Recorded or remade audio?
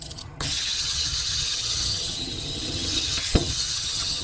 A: remade